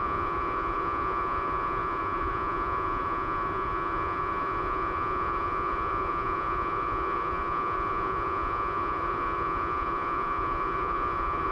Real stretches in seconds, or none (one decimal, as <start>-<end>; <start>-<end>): none